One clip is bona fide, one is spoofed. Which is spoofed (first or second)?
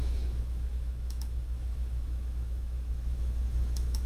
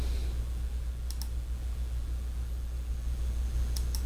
first